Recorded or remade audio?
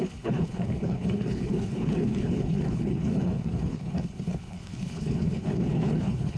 remade